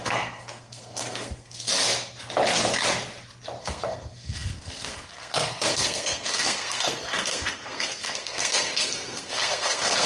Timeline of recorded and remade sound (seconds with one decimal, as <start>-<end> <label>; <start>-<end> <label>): 0.0-1.7 remade; 1.7-3.6 recorded; 3.6-10.1 remade